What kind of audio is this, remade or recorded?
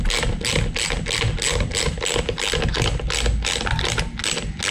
recorded